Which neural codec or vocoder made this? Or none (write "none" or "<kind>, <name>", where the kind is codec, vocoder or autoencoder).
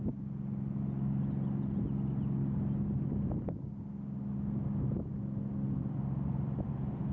none